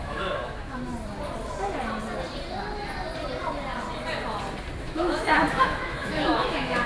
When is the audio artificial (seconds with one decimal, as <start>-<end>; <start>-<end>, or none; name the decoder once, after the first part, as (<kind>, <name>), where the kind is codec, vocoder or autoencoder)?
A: 0.0-0.9 (autoencoder, DAC-VAE); 4.8-6.9